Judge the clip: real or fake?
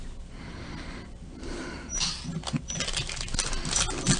real